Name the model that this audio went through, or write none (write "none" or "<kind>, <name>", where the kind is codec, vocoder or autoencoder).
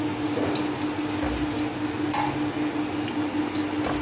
none